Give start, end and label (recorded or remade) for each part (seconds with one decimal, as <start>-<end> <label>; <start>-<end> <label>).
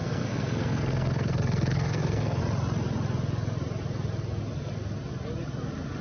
0.0-2.4 remade; 2.4-6.0 recorded